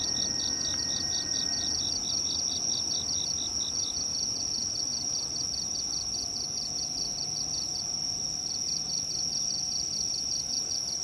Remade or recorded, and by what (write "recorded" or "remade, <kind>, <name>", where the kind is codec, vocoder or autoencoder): recorded